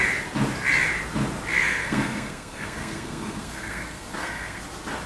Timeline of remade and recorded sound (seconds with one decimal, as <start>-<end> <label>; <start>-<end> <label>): 0.0-1.5 recorded; 1.5-4.6 remade; 4.6-5.1 recorded